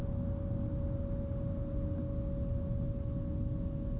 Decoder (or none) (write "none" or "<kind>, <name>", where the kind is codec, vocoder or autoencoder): none